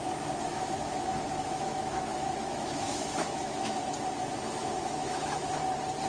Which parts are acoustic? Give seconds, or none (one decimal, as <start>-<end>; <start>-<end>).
0.0-0.5; 3.9-4.6; 5.6-6.1